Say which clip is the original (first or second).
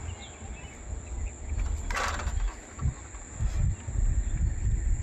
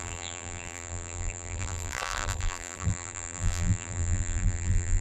first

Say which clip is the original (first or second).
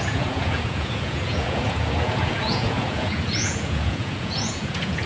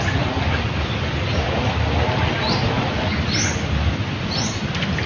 second